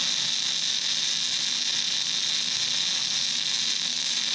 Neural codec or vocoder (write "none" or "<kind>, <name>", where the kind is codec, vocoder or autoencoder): none